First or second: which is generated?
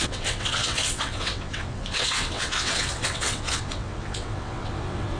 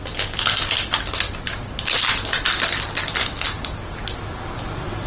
first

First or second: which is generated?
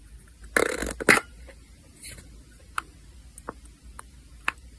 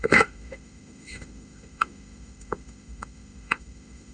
second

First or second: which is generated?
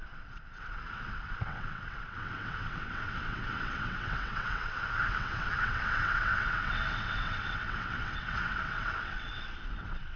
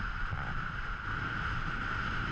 first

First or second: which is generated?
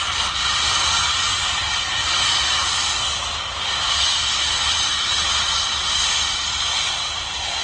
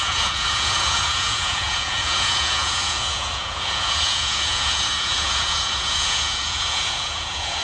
second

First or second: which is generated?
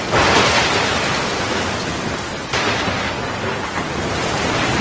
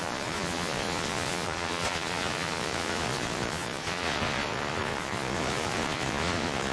second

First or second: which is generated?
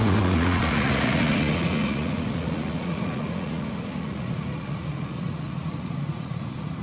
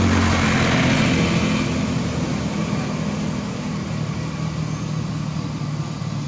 first